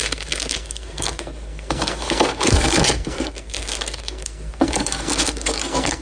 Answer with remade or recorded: remade